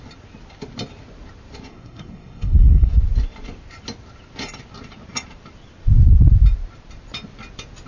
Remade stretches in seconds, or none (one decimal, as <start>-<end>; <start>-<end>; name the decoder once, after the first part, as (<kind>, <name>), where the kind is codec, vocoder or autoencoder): 1.7-2.9 (codec, SNAC)